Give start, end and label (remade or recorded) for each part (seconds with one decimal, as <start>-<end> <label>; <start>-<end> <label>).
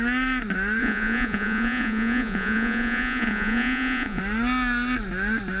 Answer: 0.0-0.8 recorded; 0.8-4.2 remade; 4.2-5.6 recorded